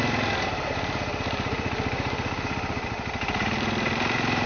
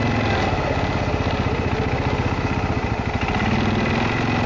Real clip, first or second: second